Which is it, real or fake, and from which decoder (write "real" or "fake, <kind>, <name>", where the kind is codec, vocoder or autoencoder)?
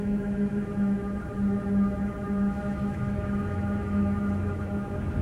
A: fake, autoencoder, DAC-VAE